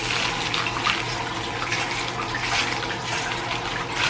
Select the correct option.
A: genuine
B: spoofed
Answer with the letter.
A